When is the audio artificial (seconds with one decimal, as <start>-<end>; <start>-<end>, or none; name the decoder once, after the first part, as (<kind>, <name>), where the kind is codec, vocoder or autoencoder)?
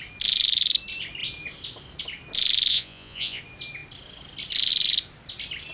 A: 2.7-3.4 (vocoder, Vocos)